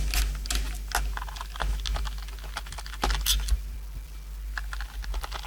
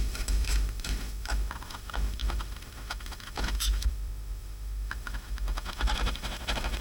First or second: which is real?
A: first